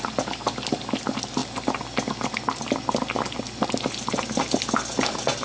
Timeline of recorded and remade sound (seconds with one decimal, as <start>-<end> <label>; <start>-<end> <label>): 0.0-5.4 recorded